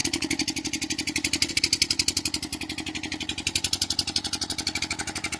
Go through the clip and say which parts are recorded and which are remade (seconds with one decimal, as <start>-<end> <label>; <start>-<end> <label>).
0.0-5.4 recorded